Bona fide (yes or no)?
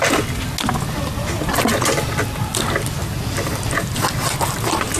yes